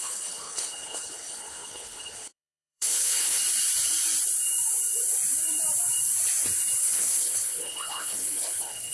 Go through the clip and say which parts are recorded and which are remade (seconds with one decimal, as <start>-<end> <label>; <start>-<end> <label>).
0.0-3.4 remade; 3.4-6.8 recorded; 6.8-8.9 remade